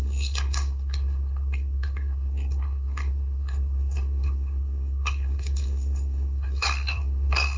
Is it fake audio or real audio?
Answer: fake